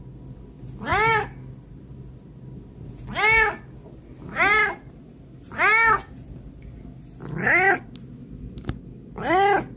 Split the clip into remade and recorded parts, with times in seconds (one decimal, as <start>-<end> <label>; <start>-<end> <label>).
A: 0.0-9.8 recorded